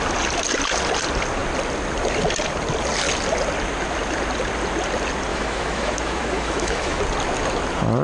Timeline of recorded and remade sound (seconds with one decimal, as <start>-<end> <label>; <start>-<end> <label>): 0.0-5.3 recorded; 5.3-7.0 remade; 7.0-8.0 recorded